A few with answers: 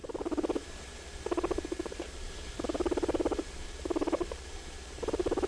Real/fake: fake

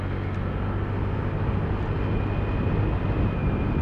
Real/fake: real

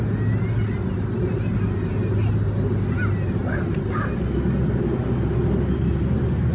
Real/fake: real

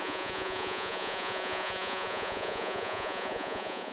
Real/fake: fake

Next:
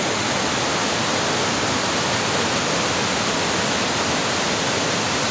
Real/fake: real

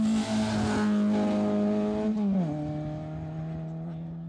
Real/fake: real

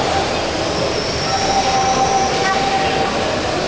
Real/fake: real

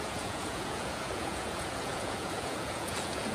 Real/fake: fake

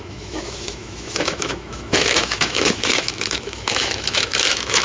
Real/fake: fake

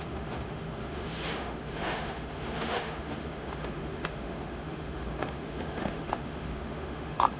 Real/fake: fake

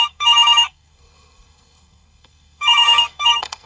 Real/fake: fake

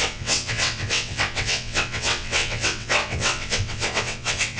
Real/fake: fake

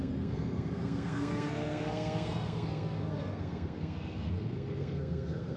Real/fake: fake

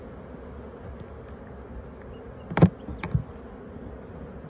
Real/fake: real